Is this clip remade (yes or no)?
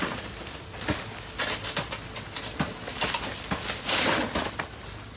no